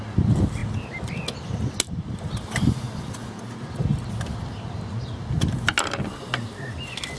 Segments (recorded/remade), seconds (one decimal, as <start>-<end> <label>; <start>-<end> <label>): 0.0-7.2 recorded